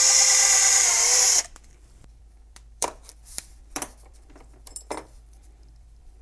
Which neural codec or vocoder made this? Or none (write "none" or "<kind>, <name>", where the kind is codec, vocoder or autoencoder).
vocoder, BigVGAN v2